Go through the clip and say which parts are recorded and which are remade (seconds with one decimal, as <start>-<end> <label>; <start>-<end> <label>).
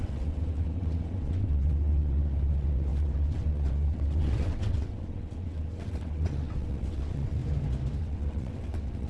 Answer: 0.0-7.4 remade; 7.4-8.0 recorded; 8.0-9.1 remade